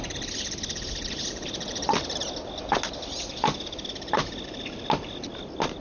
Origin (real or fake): real